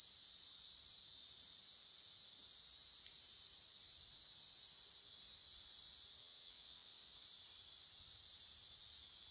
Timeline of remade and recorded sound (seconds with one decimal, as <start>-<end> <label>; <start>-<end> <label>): 0.0-6.2 recorded; 6.2-7.2 remade; 7.2-9.3 recorded